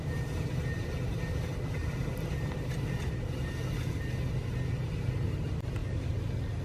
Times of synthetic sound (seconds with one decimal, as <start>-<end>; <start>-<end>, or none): 1.8-3.0